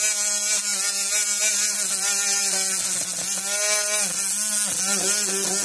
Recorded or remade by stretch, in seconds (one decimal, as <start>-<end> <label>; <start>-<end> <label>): 0.0-5.6 recorded